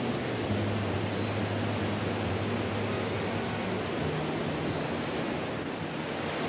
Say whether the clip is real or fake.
real